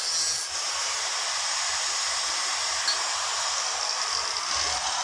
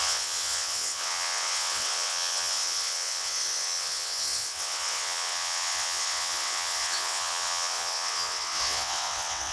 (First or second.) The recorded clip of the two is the first